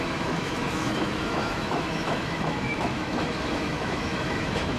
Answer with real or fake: fake